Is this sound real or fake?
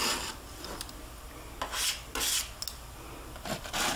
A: real